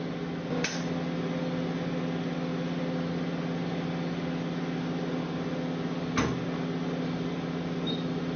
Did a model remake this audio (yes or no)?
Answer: no